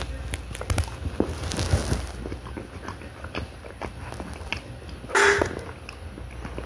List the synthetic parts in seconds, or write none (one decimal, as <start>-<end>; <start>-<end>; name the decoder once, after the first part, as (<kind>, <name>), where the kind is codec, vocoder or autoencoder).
none

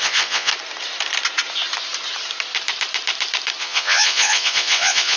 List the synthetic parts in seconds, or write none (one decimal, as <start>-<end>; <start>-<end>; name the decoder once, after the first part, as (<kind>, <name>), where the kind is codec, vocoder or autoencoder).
0.0-0.5 (vocoder, Vocos); 3.6-5.2

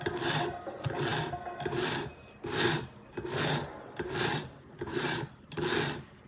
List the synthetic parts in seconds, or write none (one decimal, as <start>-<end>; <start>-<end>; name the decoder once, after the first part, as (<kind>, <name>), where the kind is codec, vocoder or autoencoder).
none

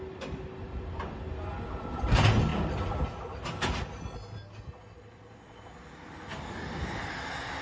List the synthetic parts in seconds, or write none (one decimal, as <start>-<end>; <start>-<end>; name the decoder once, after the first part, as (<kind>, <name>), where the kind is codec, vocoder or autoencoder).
none

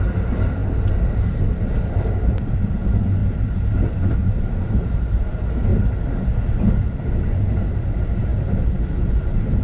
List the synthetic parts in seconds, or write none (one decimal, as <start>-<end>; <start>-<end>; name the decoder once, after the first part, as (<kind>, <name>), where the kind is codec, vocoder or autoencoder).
0.0-3.2 (vocoder, BigVGAN v2); 3.7-5.7; 6.8-9.6

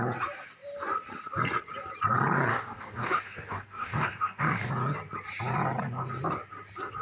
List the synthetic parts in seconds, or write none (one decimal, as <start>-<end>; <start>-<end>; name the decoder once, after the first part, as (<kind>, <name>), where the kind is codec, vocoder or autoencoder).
2.5-4.7 (codec, DAC)

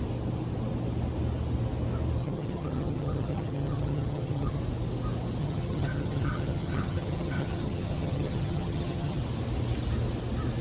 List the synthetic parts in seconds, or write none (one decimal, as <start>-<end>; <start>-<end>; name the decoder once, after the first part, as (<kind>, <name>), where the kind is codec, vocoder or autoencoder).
2.2-4.6 (vocoder, HiFi-GAN); 5.4-9.2

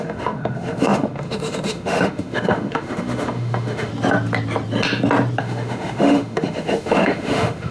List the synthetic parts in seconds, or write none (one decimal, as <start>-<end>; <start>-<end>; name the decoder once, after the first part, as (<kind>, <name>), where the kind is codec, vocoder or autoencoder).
0.0-3.9 (autoencoder, DAC-VAE); 5.4-7.7